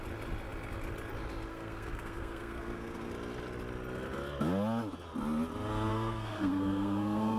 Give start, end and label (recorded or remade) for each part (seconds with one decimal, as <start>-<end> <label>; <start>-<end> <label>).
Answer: 0.0-1.5 recorded; 1.5-3.1 remade; 3.1-5.9 recorded; 5.9-7.4 remade